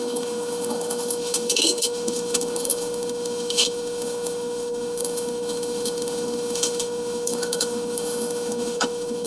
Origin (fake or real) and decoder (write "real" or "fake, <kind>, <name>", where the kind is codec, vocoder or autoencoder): fake, autoencoder, DAC-VAE